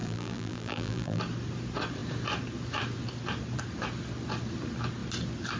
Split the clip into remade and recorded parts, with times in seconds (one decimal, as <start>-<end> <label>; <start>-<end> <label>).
0.0-1.2 remade; 1.2-5.6 recorded